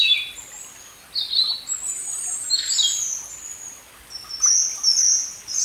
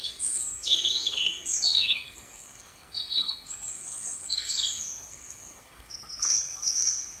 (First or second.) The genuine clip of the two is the first